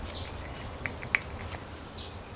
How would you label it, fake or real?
real